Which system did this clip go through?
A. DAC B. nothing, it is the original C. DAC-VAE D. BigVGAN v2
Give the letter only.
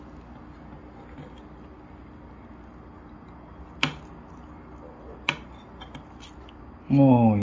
B